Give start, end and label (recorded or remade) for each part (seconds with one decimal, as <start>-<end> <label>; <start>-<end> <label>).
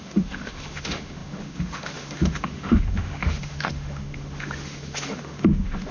0.0-5.9 remade